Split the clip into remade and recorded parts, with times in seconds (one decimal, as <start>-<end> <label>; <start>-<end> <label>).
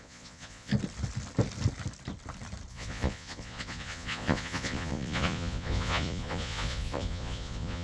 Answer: 0.0-0.7 remade; 0.7-2.7 recorded; 2.7-7.8 remade